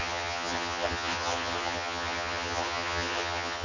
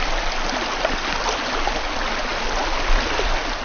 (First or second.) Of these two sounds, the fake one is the first